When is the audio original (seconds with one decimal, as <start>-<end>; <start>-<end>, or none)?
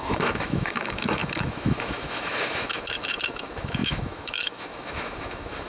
none